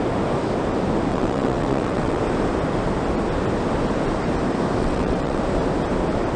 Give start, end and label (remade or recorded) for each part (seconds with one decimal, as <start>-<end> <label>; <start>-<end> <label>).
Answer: 0.0-1.1 recorded; 1.1-2.2 remade; 2.2-4.8 recorded; 4.8-5.4 remade; 5.4-6.4 recorded